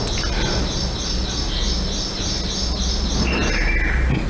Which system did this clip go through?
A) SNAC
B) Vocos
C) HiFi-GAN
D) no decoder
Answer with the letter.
D